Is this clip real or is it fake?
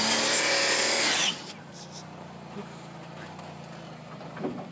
real